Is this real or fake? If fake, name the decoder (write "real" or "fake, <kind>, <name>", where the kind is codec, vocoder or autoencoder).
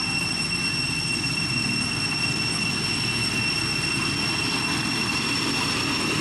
real